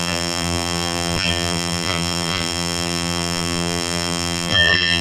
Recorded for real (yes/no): no